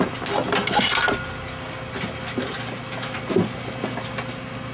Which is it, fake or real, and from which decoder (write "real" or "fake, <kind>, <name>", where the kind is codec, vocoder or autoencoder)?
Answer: real